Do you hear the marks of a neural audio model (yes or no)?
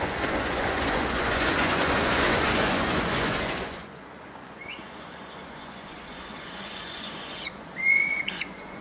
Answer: yes